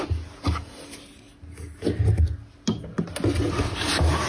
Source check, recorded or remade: recorded